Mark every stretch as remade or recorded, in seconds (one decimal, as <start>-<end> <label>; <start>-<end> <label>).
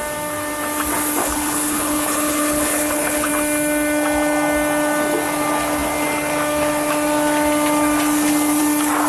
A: 0.0-1.2 recorded; 1.2-3.3 remade; 3.3-9.1 recorded